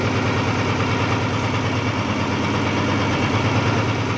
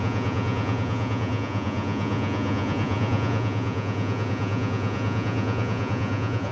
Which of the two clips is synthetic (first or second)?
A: second